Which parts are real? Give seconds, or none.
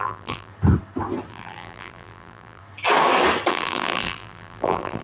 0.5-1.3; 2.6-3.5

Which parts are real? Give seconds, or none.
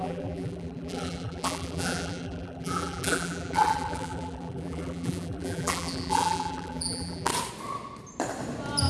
7.3-8.9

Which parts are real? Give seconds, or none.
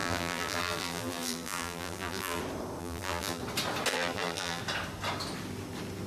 2.4-2.8; 3.4-3.9; 4.6-6.1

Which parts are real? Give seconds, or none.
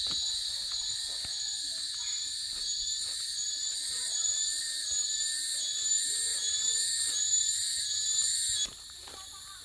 0.0-3.9; 4.6-9.6